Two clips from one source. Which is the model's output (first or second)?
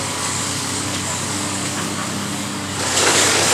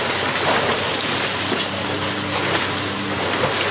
first